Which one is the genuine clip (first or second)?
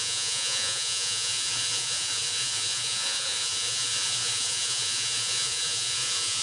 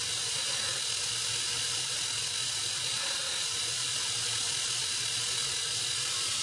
second